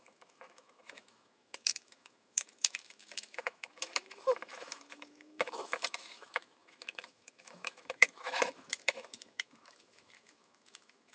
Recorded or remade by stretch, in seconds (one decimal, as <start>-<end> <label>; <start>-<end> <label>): 0.0-11.1 remade